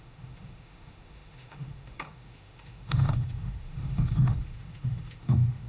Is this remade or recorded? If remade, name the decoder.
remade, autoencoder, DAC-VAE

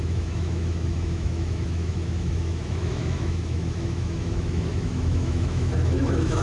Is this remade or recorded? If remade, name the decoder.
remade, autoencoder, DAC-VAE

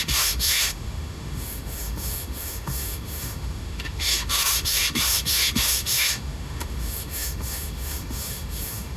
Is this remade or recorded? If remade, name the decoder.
remade, autoencoder, DAC-VAE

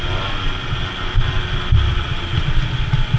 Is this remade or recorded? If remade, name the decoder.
recorded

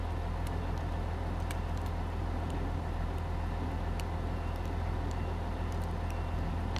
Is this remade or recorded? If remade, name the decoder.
recorded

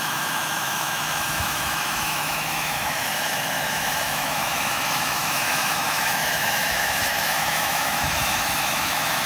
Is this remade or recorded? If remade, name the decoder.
remade, autoencoder, DAC-VAE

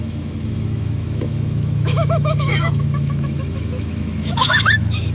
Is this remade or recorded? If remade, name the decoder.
remade, autoencoder, DAC-VAE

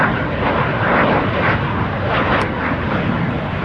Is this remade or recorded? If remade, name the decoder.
recorded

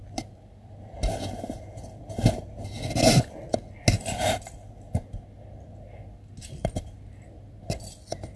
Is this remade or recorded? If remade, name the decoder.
recorded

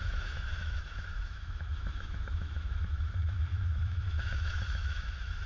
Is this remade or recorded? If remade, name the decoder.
remade, autoencoder, DAC-VAE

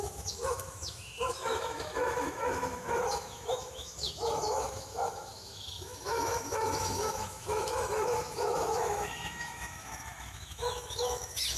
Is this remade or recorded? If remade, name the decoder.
remade, autoencoder, DAC-VAE